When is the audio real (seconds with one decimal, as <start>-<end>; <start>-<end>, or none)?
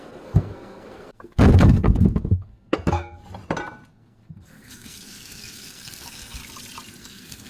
3.2-3.9; 6.4-7.0